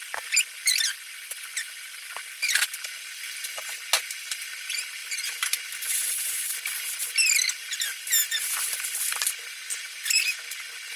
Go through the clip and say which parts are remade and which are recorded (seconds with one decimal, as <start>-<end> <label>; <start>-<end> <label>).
0.0-5.0 recorded; 5.0-5.5 remade; 5.5-11.0 recorded